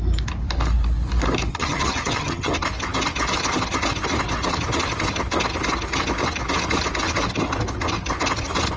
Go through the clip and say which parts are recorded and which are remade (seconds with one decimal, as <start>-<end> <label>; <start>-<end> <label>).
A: 0.0-1.5 recorded; 1.5-2.5 remade; 2.5-8.8 recorded